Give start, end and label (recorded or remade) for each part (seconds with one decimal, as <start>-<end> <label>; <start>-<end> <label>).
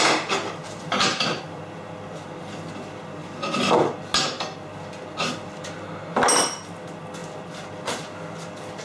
0.0-0.6 recorded; 0.6-1.4 remade; 1.4-8.8 recorded